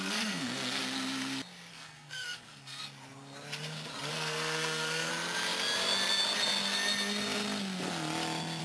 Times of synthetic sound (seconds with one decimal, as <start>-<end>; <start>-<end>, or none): 0.0-0.8; 1.7-2.8; 4.1-5.1